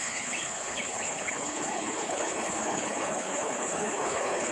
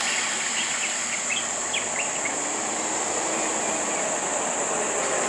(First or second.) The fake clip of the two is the first